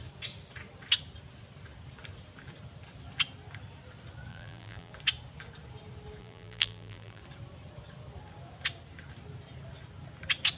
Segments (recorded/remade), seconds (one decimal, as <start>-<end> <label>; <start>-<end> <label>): 0.0-4.3 recorded; 4.3-4.9 remade; 4.9-6.2 recorded; 6.2-7.2 remade; 7.2-10.6 recorded